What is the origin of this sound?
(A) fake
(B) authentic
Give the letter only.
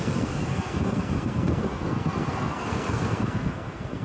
A